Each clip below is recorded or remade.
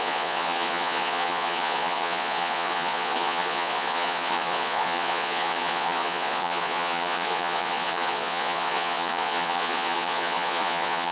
remade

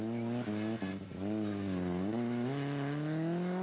recorded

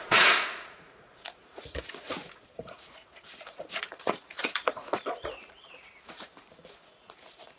remade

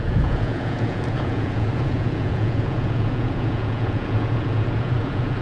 remade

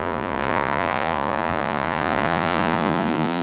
remade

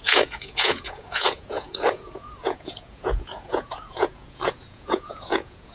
remade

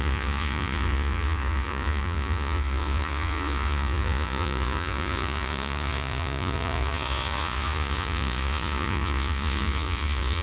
remade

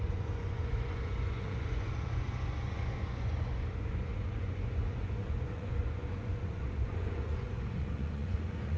remade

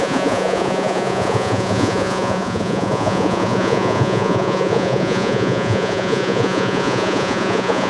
remade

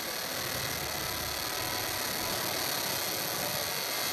recorded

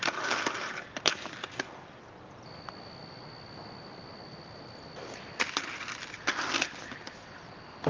recorded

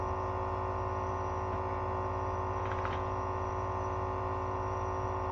remade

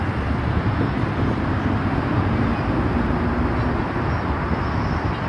recorded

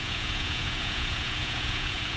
remade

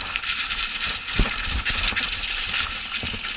recorded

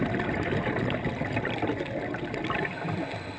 recorded